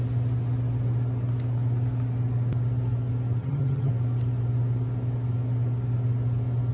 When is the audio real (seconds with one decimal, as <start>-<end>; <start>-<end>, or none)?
0.0-3.4; 3.9-6.7